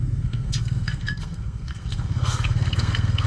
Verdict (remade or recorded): remade